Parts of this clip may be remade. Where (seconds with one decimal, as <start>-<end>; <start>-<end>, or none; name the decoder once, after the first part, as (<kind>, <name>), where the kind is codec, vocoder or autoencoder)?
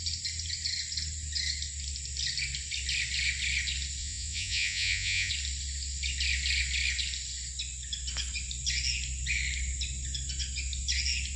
4.0-5.3 (vocoder, Vocos)